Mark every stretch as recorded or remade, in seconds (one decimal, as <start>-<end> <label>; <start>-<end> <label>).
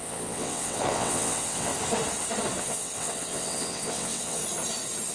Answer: 0.0-1.7 remade; 1.7-2.6 recorded; 2.6-4.4 remade; 4.4-5.1 recorded